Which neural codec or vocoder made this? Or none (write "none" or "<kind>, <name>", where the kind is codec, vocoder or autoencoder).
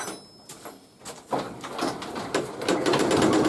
none